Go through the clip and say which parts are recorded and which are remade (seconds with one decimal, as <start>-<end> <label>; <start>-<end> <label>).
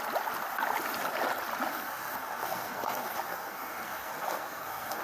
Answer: 0.0-1.7 recorded; 1.7-5.0 remade